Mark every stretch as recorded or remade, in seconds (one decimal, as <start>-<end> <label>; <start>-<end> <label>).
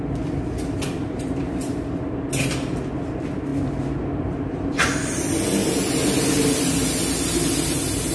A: 0.0-8.1 recorded